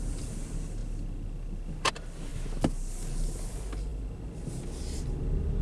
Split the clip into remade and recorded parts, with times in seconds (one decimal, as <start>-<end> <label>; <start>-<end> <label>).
0.0-5.6 recorded